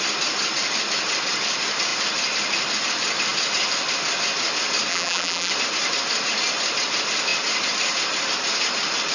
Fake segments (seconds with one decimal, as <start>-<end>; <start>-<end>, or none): 4.9-5.5